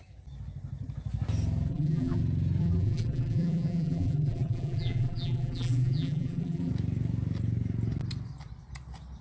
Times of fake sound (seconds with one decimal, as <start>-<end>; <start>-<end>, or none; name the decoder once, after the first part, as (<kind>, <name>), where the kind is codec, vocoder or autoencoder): 1.7-2.2 (vocoder, BigVGAN v2); 2.6-6.7